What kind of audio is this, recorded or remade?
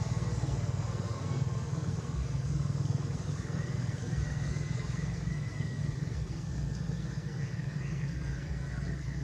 remade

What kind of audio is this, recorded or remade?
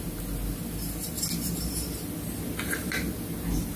recorded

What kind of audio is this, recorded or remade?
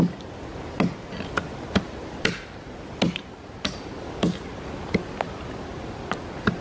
recorded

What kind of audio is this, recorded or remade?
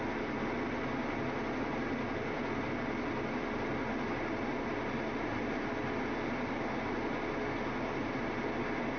recorded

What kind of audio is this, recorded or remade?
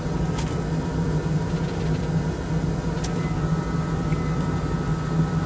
recorded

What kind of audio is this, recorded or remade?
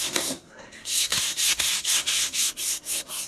remade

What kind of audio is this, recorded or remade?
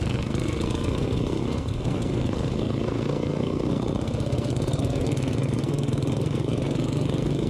remade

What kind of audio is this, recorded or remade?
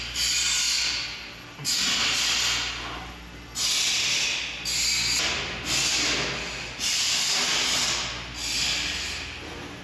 recorded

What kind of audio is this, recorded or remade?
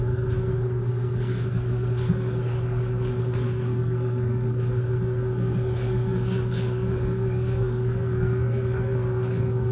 remade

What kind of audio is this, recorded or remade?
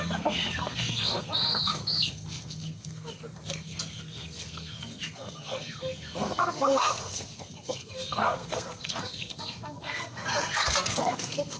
remade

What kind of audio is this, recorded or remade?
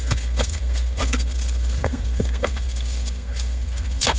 remade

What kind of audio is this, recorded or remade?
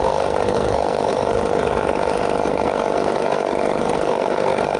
remade